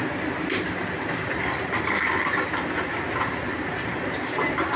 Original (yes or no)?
yes